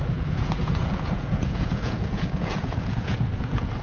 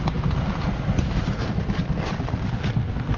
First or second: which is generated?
first